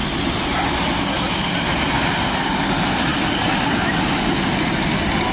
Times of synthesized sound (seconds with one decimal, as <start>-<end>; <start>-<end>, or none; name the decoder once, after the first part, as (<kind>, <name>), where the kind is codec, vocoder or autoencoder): none